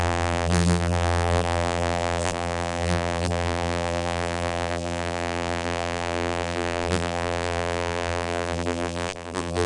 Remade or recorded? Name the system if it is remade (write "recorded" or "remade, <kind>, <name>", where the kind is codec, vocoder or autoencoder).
remade, vocoder, BigVGAN v2